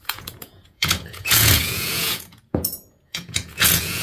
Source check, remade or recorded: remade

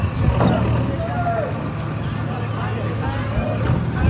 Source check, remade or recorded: recorded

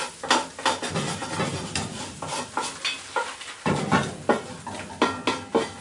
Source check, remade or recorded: recorded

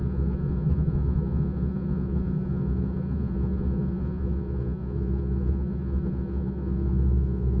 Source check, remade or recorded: remade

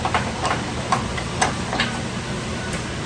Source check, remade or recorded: recorded